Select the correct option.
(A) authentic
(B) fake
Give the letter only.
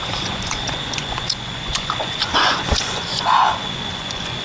B